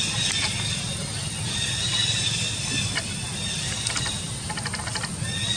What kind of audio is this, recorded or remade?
recorded